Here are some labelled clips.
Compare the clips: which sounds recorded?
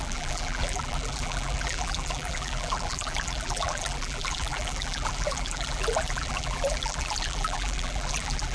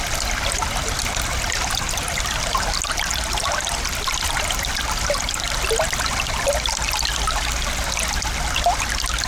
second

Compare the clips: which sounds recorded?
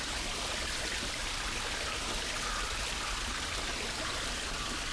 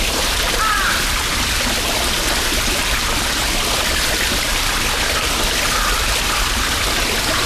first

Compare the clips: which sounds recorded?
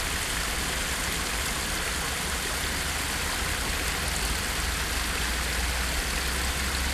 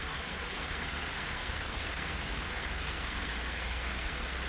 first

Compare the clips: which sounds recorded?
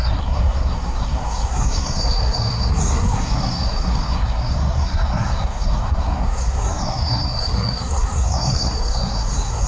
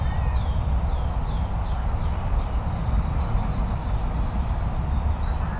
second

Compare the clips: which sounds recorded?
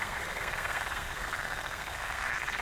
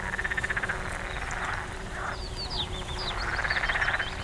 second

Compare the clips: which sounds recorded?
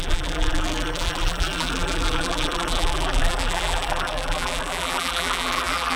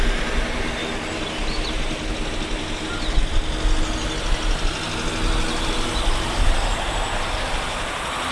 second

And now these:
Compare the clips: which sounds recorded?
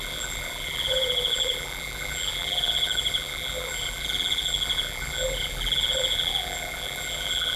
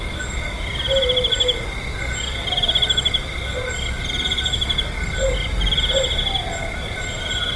second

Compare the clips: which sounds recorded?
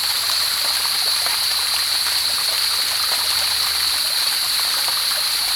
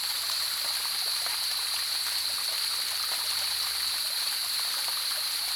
second